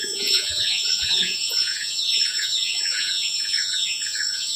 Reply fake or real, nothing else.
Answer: fake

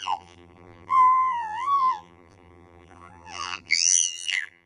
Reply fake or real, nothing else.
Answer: fake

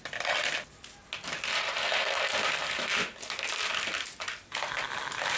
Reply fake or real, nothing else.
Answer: real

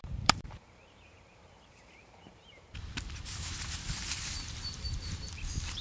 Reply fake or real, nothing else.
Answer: fake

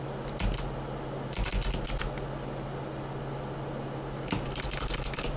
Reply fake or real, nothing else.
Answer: real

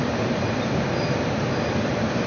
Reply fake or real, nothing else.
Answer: real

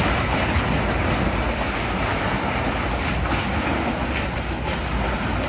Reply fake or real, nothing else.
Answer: real